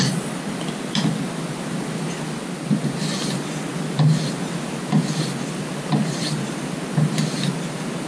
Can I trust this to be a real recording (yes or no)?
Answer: yes